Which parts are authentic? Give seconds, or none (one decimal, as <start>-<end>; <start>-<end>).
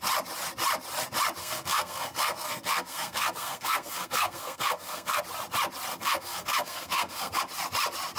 0.0-1.4; 5.2-5.9; 7.4-8.2